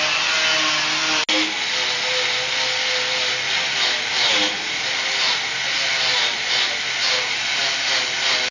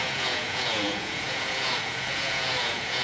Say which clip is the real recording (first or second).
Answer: first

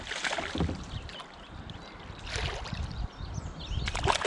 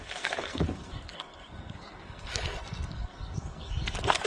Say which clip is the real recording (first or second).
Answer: first